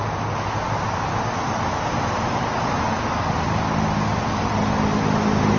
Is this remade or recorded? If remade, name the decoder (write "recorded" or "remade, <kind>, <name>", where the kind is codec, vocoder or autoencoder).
recorded